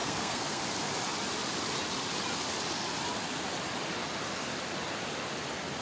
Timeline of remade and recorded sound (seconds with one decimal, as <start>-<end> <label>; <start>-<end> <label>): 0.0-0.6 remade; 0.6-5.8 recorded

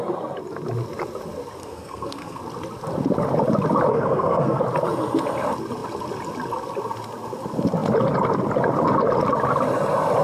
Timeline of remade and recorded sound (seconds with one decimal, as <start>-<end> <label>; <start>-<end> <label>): 0.0-1.6 recorded; 1.6-2.4 remade; 2.4-3.9 recorded; 3.9-4.6 remade; 4.6-10.2 recorded

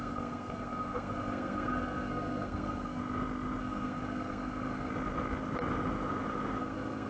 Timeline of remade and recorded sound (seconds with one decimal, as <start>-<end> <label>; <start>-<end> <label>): 0.0-3.0 remade; 3.0-3.6 recorded; 3.6-4.9 remade; 4.9-6.6 recorded; 6.6-7.1 remade